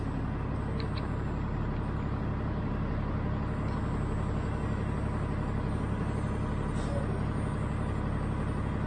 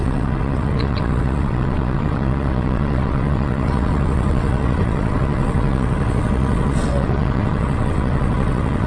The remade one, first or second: second